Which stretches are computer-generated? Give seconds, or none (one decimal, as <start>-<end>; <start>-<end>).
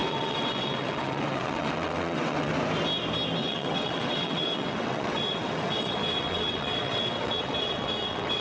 0.0-2.5; 3.4-8.4